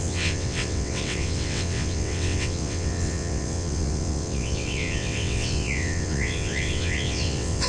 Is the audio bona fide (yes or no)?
no